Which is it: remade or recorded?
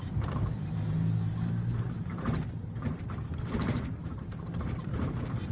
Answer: remade